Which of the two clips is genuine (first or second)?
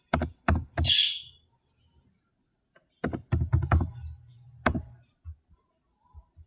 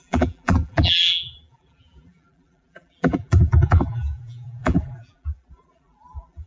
first